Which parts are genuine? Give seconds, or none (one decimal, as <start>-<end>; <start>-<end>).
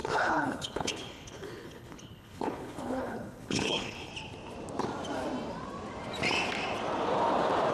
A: 4.1-7.7